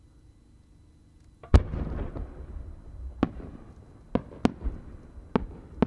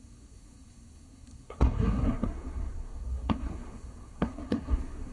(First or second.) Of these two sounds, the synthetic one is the second